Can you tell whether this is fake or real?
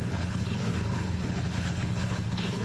fake